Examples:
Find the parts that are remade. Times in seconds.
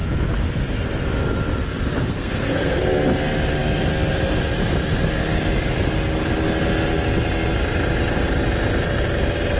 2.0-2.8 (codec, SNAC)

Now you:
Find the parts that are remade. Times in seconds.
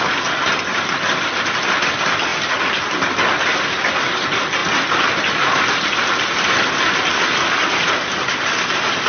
none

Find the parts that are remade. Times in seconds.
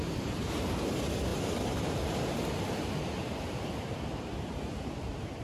none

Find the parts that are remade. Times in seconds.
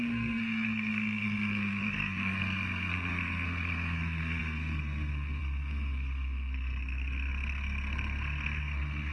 0.0-9.1 (codec, SNAC)